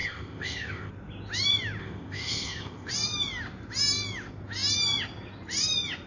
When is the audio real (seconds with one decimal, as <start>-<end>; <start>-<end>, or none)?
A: 0.9-1.8; 2.9-6.1